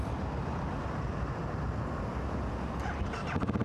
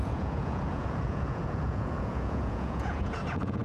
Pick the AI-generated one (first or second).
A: second